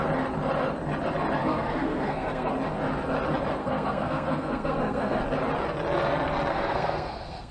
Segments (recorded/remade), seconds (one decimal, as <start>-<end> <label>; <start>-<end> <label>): 0.0-1.4 recorded; 1.4-2.5 remade; 2.5-3.6 recorded; 3.6-5.2 remade; 5.2-6.5 recorded; 6.5-7.5 remade